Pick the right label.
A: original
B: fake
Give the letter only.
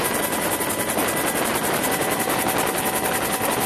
A